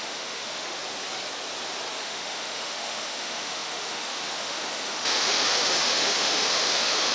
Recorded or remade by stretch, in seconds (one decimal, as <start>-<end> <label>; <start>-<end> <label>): 0.0-0.8 remade; 0.8-2.0 recorded; 2.0-7.1 remade